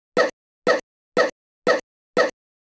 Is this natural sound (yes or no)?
yes